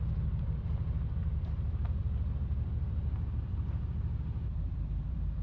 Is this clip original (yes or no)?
no